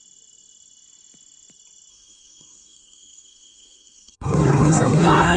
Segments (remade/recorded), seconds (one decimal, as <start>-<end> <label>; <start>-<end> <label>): 0.0-1.9 recorded; 1.9-5.4 remade